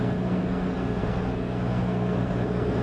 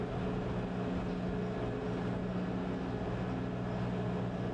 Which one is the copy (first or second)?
first